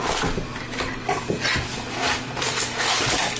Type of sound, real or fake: real